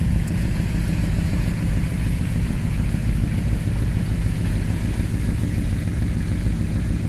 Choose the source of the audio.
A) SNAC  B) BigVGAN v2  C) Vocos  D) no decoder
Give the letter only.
C